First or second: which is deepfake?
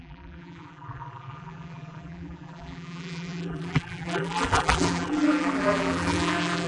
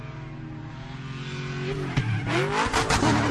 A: first